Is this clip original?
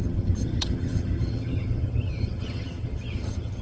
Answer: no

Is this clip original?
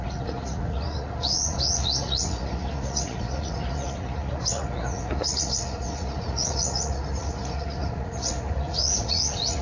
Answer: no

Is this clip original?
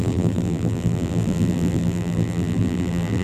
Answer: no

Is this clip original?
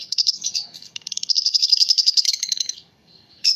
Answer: no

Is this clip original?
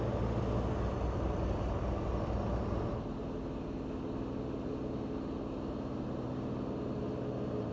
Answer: yes